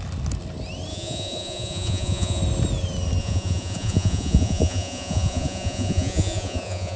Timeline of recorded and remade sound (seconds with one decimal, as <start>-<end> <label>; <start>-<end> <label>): 0.0-0.9 recorded; 0.9-2.4 remade; 2.4-3.2 recorded; 3.2-7.0 remade